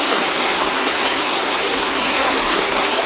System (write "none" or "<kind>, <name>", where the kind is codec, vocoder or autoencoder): codec, SNAC